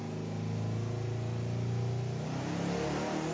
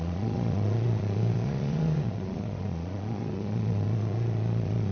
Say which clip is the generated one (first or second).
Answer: second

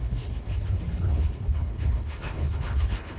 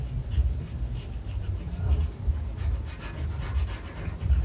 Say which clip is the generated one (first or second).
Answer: first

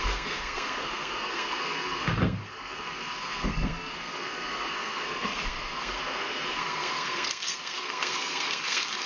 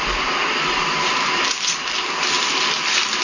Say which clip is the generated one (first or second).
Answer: first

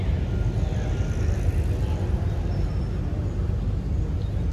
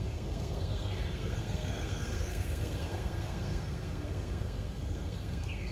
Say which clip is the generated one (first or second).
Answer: second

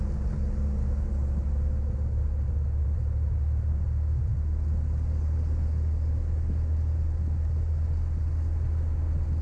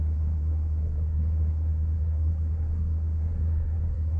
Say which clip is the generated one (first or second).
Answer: second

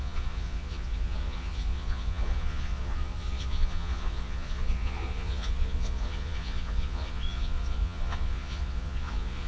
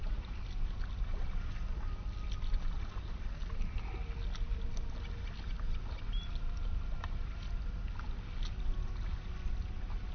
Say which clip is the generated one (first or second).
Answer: first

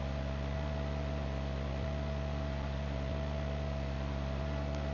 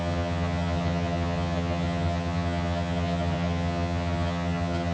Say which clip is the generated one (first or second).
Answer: second